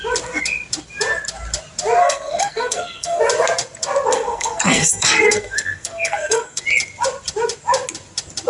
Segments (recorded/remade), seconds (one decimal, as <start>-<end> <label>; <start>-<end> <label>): 0.0-2.0 recorded; 2.0-3.2 remade; 3.2-4.1 recorded; 4.1-6.6 remade; 6.6-8.5 recorded